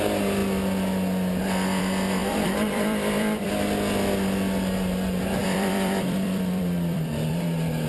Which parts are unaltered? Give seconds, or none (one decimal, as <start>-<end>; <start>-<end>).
0.0-2.2; 3.5-5.4